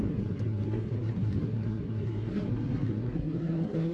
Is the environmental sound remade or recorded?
remade